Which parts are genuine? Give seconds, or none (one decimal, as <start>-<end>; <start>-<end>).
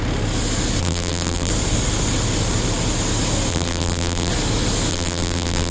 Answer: 0.0-0.8; 1.5-3.5; 4.3-4.9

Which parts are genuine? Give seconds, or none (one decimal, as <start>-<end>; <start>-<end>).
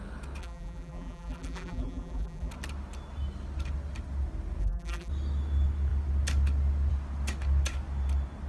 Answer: 0.0-0.4; 2.5-4.6; 5.1-8.5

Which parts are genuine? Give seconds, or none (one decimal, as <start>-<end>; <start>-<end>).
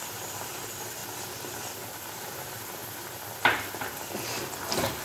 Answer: 1.0-1.7; 2.8-5.0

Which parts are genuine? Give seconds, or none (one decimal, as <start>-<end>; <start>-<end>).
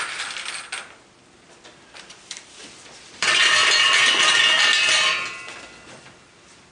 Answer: 0.0-2.6; 4.3-6.7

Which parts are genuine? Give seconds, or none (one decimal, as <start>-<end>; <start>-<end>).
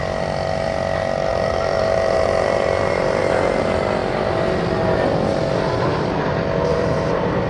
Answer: 0.0-1.3; 3.2-6.7